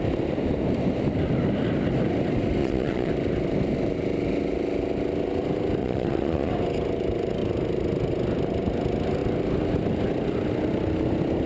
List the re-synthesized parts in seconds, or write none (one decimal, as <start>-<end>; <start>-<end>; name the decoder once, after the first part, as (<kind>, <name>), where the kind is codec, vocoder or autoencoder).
2.6-3.1 (vocoder, Vocos); 5.8-6.5